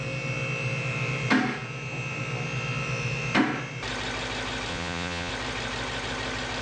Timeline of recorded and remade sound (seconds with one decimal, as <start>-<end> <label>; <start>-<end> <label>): 0.0-4.7 recorded; 4.7-5.3 remade; 5.3-6.6 recorded

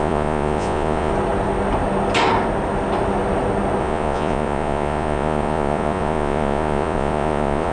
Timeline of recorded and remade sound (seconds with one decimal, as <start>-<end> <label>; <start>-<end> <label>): 0.0-1.1 remade; 1.1-3.8 recorded; 3.8-7.7 remade

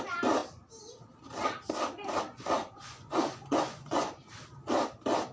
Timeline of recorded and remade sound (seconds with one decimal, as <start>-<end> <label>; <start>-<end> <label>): 0.0-2.6 recorded; 2.6-4.2 remade; 4.2-5.3 recorded

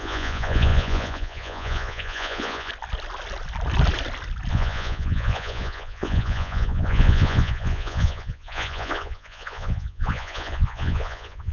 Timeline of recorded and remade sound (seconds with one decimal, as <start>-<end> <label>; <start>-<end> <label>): 0.0-2.7 remade; 2.7-4.5 recorded; 4.5-11.5 remade